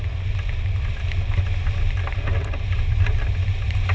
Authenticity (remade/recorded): recorded